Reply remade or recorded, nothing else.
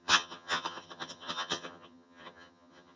remade